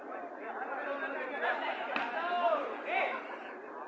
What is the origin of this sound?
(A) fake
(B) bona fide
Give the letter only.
B